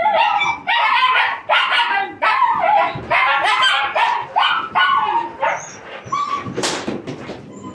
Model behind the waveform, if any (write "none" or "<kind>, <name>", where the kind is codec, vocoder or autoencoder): none